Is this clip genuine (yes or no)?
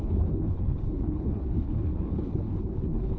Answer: no